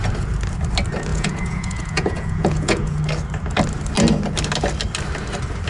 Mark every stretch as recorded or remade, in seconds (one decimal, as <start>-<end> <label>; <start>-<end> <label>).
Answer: 0.0-1.1 recorded; 1.1-3.0 remade; 3.0-5.7 recorded